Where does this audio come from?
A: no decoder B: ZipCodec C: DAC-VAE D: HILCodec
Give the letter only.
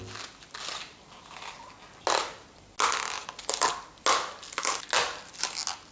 A